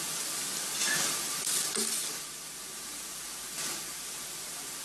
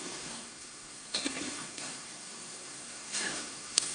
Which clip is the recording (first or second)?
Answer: first